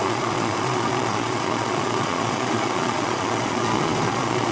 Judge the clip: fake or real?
fake